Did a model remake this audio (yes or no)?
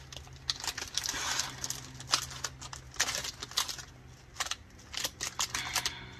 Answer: no